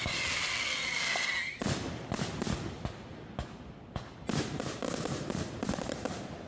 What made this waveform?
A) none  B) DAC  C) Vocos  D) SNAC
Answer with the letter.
A